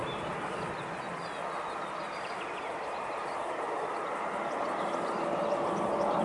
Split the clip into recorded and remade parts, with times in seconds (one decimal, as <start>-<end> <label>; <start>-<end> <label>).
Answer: 0.0-6.2 recorded